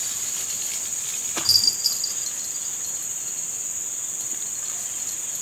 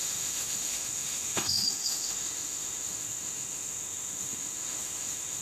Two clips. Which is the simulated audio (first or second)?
second